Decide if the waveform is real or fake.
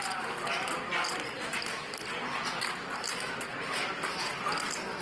real